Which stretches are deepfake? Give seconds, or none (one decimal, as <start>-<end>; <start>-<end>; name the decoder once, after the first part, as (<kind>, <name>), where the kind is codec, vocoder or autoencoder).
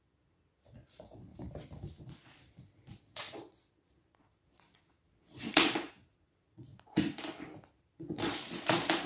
0.0-1.3 (vocoder, Vocos); 2.0-6.7; 7.8-9.1